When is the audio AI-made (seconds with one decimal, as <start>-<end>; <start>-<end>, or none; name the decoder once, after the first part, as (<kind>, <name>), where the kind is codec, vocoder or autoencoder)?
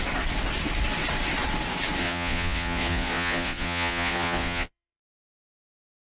2.0-5.0 (vocoder, Vocos)